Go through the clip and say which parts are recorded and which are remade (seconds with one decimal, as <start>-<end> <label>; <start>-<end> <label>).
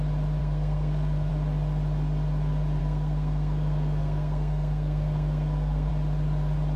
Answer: 0.0-0.4 recorded; 0.4-1.3 remade; 1.3-2.8 recorded; 2.8-5.9 remade; 5.9-6.8 recorded